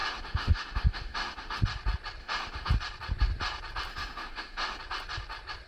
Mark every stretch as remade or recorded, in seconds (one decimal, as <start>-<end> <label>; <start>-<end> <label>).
0.0-1.6 remade; 1.6-2.2 recorded; 2.2-2.7 remade; 2.7-3.9 recorded; 3.9-4.8 remade; 4.8-5.7 recorded